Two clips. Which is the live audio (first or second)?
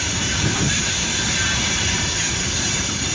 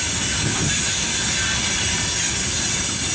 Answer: second